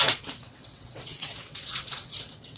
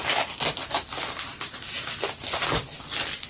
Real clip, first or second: second